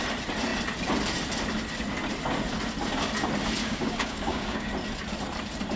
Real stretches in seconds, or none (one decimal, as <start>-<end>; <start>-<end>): 0.0-3.6; 4.7-5.8